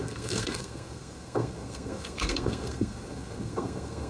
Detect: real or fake fake